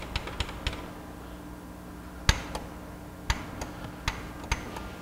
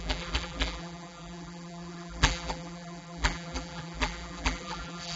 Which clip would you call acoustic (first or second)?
first